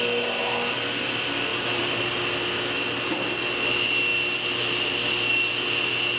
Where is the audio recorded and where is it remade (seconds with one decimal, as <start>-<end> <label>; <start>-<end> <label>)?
0.0-1.5 recorded; 1.5-2.0 remade; 2.0-6.2 recorded